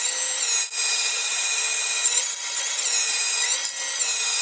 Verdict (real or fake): real